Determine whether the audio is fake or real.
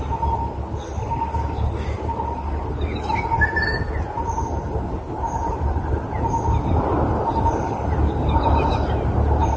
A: real